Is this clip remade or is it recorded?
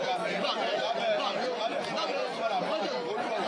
recorded